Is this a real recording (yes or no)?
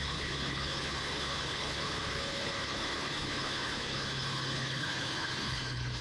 no